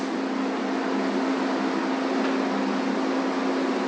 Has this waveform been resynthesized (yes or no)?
no